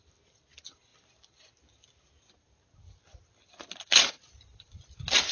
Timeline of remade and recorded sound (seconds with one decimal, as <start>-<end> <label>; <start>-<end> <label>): 0.0-5.3 recorded